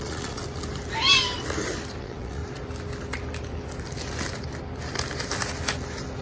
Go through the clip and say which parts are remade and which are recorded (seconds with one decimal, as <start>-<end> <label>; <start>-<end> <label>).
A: 0.0-0.4 remade; 0.4-2.0 recorded; 2.0-2.4 remade; 2.4-6.2 recorded